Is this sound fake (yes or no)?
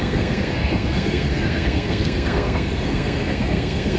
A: yes